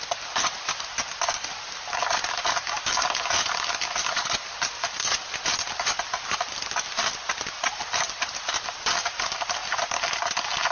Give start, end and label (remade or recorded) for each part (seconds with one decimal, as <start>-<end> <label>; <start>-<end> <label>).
0.0-10.7 recorded